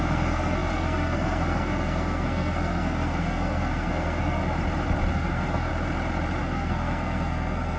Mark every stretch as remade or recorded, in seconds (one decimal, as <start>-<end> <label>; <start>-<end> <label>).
0.0-4.4 remade; 4.4-5.1 recorded; 5.1-5.7 remade; 5.7-6.4 recorded; 6.4-7.8 remade